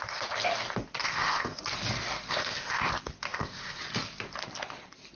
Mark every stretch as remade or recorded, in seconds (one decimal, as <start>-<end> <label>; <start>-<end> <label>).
0.0-1.0 recorded; 1.0-1.6 remade; 1.6-2.3 recorded; 2.3-2.9 remade; 2.9-3.3 recorded; 3.3-3.8 remade; 3.8-5.1 recorded